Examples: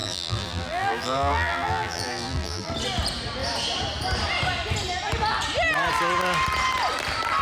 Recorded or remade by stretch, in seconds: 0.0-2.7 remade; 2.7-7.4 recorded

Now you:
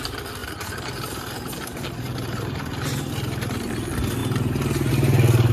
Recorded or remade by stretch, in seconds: 0.0-0.4 recorded; 0.4-3.7 remade; 3.7-5.5 recorded

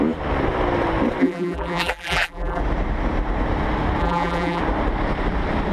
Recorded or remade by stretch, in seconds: 0.0-1.2 recorded; 1.2-2.6 remade; 2.6-4.0 recorded; 4.0-4.6 remade; 4.6-5.7 recorded

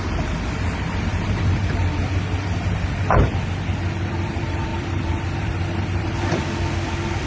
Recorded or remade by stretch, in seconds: 0.0-1.8 remade; 1.8-4.1 recorded; 4.1-7.3 remade

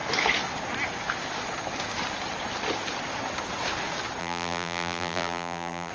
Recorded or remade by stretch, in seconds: 0.0-4.2 recorded; 4.2-5.9 remade

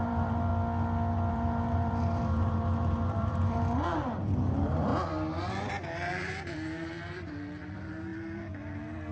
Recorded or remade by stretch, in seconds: 0.0-0.5 remade; 0.5-1.3 recorded; 1.3-4.9 remade; 4.9-5.7 recorded; 5.7-9.1 remade